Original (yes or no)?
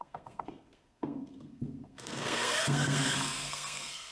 no